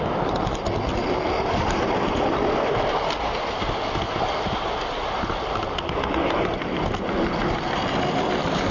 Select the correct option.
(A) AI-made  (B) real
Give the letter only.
B